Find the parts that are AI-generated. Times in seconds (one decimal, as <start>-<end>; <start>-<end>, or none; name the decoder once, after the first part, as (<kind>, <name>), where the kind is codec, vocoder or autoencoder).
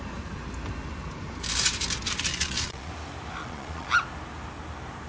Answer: 2.3-2.9 (vocoder, Vocos); 3.4-3.9